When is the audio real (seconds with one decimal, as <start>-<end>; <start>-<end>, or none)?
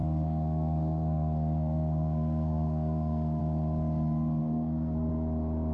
3.4-4.4; 5.1-5.7